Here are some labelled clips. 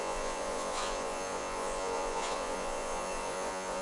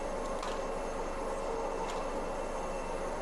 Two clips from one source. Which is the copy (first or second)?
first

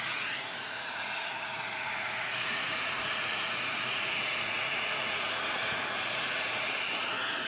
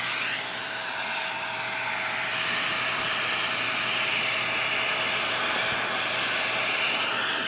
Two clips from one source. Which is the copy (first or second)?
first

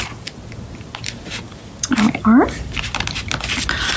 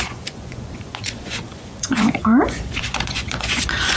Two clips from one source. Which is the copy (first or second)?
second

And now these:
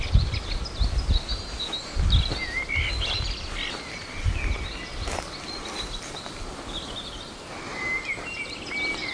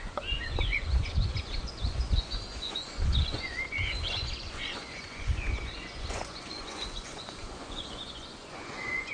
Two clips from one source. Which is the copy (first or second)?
second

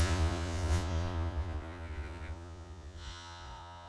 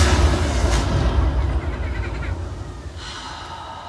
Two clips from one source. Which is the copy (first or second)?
first